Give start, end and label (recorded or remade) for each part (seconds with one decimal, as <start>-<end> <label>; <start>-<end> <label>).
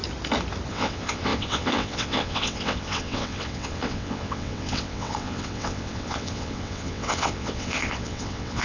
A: 0.0-0.7 recorded; 0.7-8.6 remade